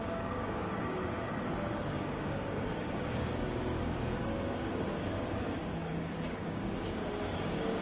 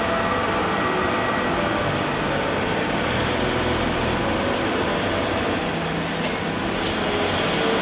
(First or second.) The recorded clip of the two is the second